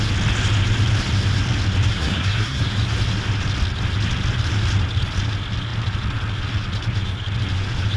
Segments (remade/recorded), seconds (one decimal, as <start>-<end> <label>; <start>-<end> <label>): 0.0-1.9 recorded; 1.9-2.6 remade; 2.6-8.0 recorded